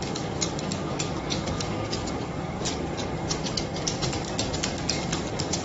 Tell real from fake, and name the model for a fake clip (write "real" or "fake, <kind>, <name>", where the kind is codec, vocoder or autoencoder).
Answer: fake, codec, DAC